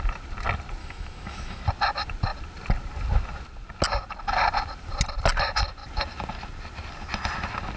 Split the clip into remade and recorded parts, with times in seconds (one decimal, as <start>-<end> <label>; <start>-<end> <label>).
0.0-0.8 recorded; 0.8-1.6 remade; 1.6-7.8 recorded